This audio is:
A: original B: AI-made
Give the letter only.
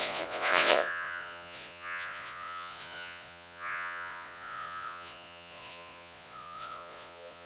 B